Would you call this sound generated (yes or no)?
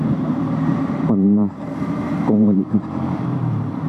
yes